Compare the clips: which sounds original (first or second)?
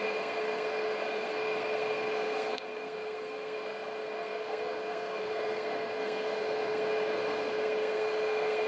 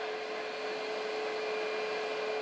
second